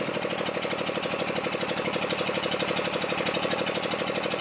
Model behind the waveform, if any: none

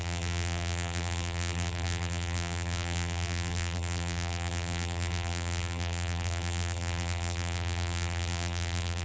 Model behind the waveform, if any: vocoder, BigVGAN v2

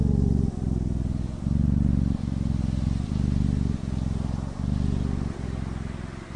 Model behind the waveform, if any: none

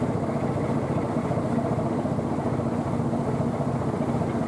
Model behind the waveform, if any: none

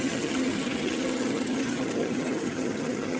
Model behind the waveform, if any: vocoder, HiFi-GAN